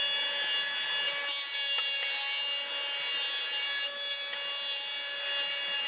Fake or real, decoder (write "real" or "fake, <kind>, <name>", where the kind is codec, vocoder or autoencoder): real